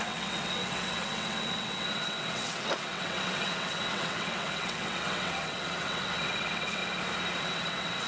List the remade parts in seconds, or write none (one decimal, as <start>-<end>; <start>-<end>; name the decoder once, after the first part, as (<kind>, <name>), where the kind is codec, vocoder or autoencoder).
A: 0.0-6.8 (vocoder, WaveNeXt); 7.4-8.1